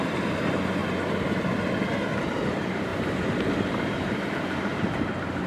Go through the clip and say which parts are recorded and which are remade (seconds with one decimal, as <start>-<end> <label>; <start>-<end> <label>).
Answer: 0.0-0.8 remade; 0.8-2.2 recorded; 2.2-5.5 remade